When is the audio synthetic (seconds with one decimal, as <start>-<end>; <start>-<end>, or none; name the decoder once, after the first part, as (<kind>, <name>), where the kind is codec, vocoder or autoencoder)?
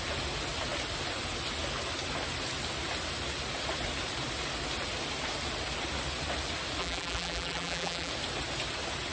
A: 6.8-8.1 (vocoder, BigVGAN v2)